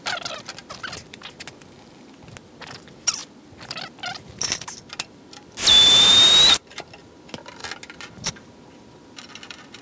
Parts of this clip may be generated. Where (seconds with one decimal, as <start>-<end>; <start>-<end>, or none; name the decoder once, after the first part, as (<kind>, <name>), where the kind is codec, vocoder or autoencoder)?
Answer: 5.7-7.0 (vocoder, BigVGAN v2)